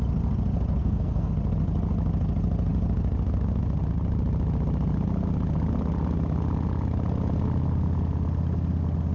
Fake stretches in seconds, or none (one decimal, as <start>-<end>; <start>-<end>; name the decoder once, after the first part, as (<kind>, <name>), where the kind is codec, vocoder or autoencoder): 0.8-1.3 (codec, SNAC)